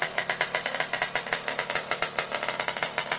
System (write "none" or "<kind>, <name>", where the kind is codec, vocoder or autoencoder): none